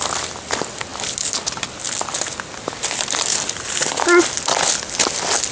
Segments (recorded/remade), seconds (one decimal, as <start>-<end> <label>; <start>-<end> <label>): 0.0-5.5 recorded